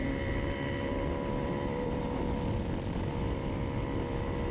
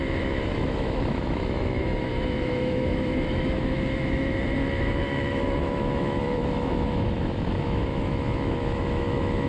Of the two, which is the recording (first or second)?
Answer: first